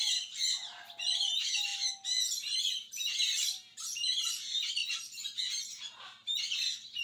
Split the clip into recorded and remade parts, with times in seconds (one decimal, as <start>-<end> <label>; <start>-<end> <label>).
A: 0.0-7.0 recorded